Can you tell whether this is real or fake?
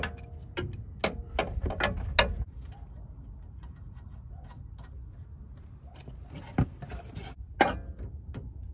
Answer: real